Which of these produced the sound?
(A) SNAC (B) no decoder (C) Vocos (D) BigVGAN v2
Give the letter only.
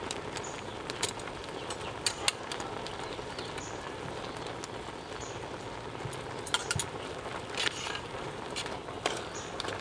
B